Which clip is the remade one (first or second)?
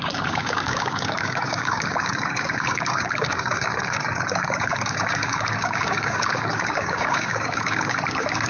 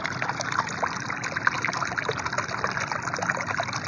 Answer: first